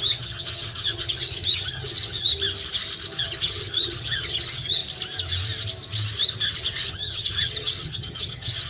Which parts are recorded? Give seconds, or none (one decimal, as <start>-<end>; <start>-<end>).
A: 2.3-3.2; 4.8-6.9